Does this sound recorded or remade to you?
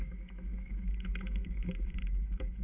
remade